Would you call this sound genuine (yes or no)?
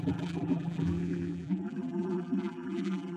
no